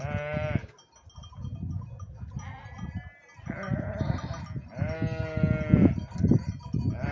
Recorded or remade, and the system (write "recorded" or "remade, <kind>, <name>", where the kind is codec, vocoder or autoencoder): recorded